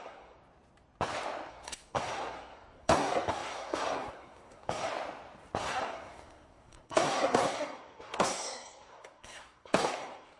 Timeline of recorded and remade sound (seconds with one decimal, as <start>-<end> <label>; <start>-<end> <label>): 0.0-0.4 remade; 0.4-1.5 recorded; 1.5-4.9 remade; 4.9-5.6 recorded; 5.6-10.4 remade

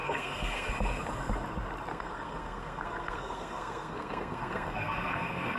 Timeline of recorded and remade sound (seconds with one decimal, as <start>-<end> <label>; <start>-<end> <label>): 0.0-0.7 remade; 0.7-1.9 recorded; 1.9-5.6 remade

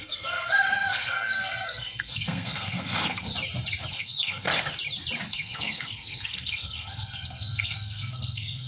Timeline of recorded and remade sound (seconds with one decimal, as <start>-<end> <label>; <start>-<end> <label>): 0.0-3.3 remade; 3.3-3.9 recorded; 3.9-4.5 remade; 4.5-5.3 recorded; 5.3-8.7 remade

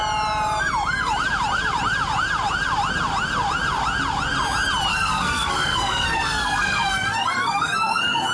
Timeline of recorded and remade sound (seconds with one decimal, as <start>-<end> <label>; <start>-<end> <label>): 0.0-4.9 recorded; 4.9-8.3 remade

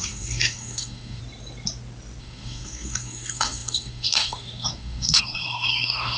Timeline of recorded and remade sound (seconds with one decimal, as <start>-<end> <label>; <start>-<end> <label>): 0.0-1.2 remade; 1.2-2.2 recorded; 2.2-6.2 remade

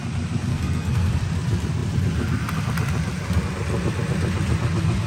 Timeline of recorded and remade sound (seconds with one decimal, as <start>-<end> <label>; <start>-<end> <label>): 0.0-0.5 recorded; 0.5-1.1 remade; 1.1-5.1 recorded

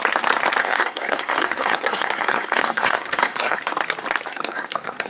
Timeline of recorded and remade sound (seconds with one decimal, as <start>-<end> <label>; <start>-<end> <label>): 0.0-0.6 recorded; 0.6-3.7 remade; 3.7-4.3 recorded; 4.3-5.1 remade

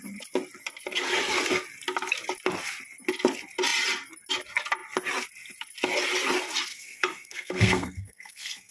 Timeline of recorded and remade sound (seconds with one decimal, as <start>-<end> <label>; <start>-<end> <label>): 0.0-6.7 recorded; 6.7-8.7 remade